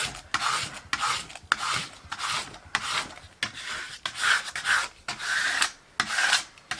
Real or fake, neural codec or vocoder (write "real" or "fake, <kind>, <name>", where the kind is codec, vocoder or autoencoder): real